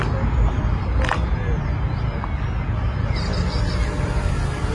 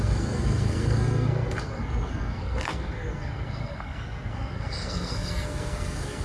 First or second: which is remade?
second